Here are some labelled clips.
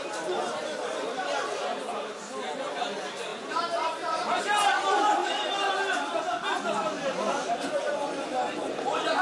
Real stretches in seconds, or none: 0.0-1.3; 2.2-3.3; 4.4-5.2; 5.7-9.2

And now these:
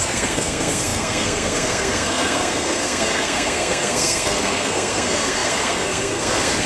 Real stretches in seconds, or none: none

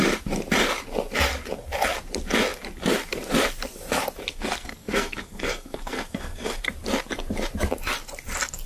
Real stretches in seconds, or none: 0.0-4.3; 6.6-8.7

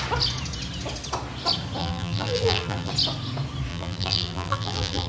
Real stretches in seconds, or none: 0.0-1.8; 2.9-3.7

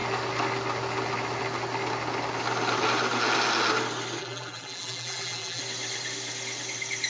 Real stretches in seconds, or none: 0.0-4.2; 5.6-7.1